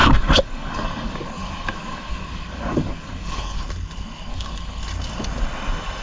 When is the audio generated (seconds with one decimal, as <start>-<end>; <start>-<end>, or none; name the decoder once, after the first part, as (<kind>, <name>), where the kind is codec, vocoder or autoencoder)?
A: 0.0-3.6 (codec, DAC); 4.3-4.8